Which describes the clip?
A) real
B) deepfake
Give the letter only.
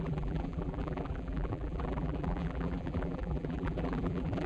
B